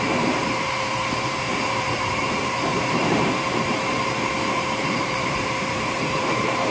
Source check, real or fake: fake